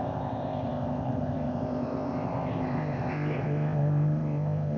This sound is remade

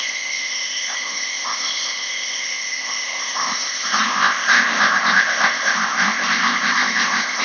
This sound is remade